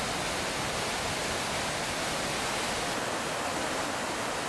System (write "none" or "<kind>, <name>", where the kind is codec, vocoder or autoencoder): none